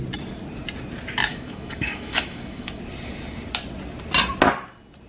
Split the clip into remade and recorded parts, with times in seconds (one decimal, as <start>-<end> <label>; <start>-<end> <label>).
0.0-1.3 recorded; 1.3-2.8 remade; 2.8-5.1 recorded